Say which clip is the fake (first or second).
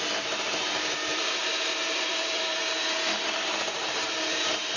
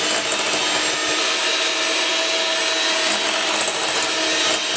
first